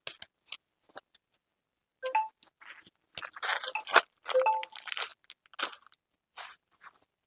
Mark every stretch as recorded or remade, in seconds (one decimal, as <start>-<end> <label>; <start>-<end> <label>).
0.0-7.3 recorded

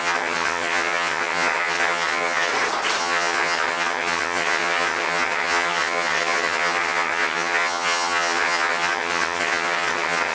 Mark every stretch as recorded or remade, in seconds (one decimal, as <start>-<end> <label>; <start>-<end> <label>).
0.0-2.5 remade; 2.5-3.0 recorded; 3.0-10.3 remade

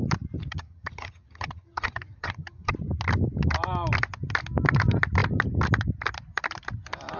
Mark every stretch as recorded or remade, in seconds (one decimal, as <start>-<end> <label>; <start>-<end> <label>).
0.0-0.4 recorded; 0.4-2.7 remade; 2.7-7.2 recorded

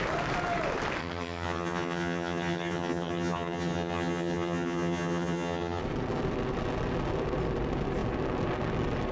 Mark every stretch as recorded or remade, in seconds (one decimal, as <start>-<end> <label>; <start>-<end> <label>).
0.0-1.0 recorded; 1.0-5.8 remade; 5.8-9.1 recorded

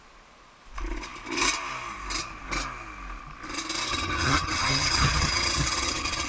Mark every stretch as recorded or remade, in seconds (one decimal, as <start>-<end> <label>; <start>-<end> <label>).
0.0-3.9 recorded; 3.9-6.3 remade